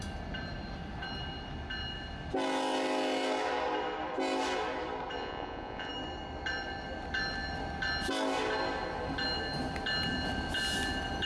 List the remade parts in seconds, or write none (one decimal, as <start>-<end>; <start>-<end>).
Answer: 5.2-5.9